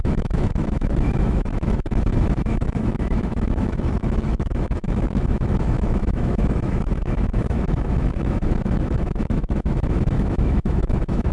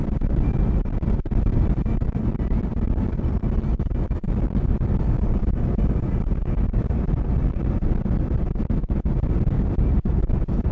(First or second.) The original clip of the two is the second